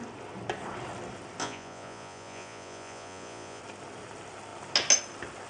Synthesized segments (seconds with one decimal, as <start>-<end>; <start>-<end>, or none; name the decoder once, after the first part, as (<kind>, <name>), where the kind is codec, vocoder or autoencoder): 1.4-3.6 (vocoder, Vocos)